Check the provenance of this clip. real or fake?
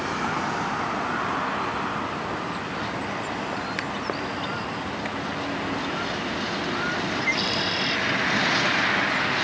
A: real